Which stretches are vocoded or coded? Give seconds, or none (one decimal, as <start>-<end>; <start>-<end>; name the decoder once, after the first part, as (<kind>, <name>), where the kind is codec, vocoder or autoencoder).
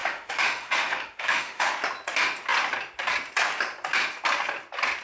0.0-1.7 (autoencoder, DAC-VAE)